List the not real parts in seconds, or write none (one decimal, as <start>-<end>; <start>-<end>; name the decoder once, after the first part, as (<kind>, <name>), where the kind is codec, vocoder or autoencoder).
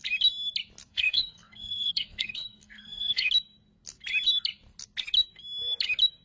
0.9-3.3 (codec, SNAC)